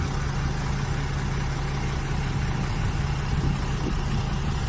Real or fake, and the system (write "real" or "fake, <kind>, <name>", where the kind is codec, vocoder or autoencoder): real